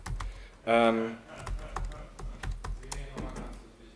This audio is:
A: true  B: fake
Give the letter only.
A